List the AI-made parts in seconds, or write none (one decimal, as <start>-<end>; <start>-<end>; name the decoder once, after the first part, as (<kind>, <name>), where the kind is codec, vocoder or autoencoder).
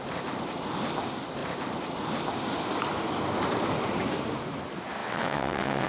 5.0-5.9 (vocoder, WaveNeXt)